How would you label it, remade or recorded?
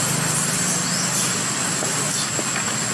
recorded